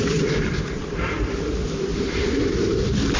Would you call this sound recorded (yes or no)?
no